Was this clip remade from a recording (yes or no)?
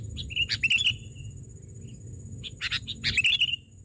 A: no